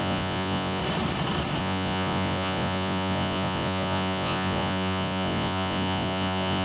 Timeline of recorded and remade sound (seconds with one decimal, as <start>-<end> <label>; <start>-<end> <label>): 0.0-0.8 remade; 0.8-1.6 recorded; 1.6-6.6 remade